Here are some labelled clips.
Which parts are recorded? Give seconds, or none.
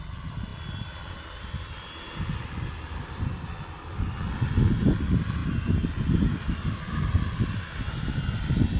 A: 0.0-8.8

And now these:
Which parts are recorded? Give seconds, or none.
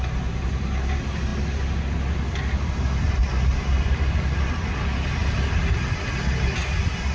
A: 0.0-7.1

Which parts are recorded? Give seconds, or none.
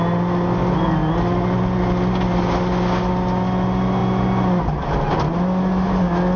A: 0.0-6.4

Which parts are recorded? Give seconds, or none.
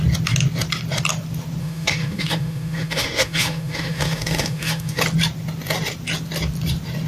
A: 0.0-1.6; 5.0-7.1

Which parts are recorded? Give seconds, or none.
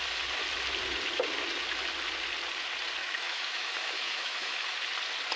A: 0.0-3.0; 4.8-5.4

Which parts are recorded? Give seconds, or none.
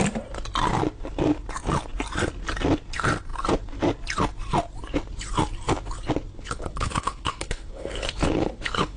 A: 0.0-6.3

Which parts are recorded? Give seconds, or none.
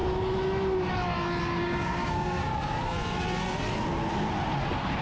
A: 0.0-1.4; 2.5-5.0